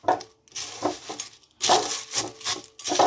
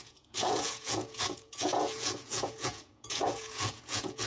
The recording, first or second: first